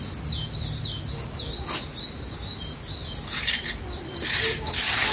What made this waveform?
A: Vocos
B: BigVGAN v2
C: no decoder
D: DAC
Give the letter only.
C